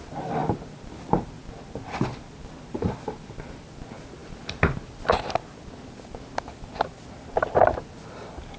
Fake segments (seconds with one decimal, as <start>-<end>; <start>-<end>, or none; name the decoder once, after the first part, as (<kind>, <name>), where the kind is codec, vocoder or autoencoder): none